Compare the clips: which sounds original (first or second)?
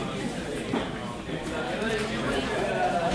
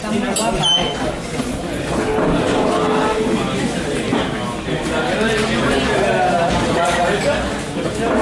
second